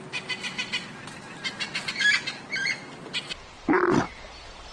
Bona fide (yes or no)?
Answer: yes